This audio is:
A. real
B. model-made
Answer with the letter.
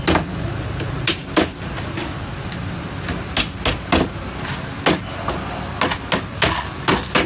A